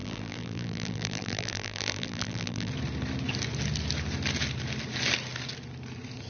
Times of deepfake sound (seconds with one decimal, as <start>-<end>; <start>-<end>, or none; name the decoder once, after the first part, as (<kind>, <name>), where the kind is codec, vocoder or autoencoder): 0.0-2.7 (vocoder, BigVGAN v2)